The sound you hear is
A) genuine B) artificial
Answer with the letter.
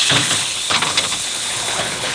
B